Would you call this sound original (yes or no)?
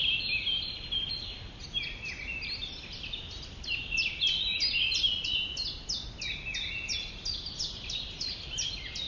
yes